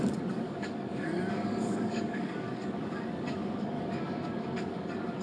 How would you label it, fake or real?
fake